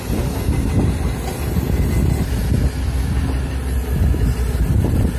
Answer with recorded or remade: recorded